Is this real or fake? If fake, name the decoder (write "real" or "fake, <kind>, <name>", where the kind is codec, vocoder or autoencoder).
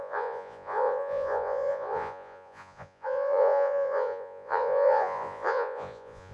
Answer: fake, vocoder, Vocos